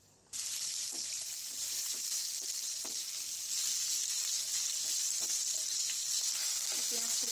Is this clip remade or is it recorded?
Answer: recorded